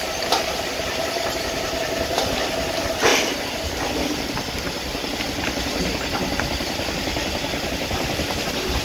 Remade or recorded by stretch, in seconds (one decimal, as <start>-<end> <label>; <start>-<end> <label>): 0.0-3.1 remade; 3.1-5.2 recorded; 5.2-8.8 remade